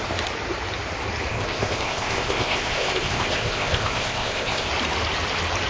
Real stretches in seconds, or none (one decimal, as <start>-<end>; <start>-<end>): 0.0-1.3; 4.7-5.7